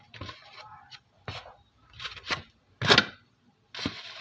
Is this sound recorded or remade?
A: recorded